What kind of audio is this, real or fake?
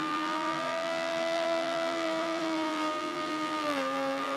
fake